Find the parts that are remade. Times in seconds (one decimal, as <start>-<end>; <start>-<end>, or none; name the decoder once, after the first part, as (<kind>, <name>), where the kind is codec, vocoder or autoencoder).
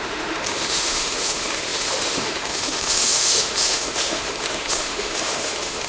0.0-5.9 (autoencoder, DAC-VAE)